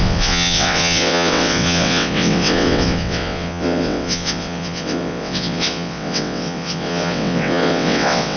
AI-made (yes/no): yes